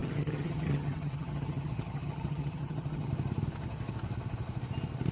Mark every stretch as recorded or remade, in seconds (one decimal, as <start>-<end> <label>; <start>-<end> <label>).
0.0-3.1 remade; 3.1-5.1 recorded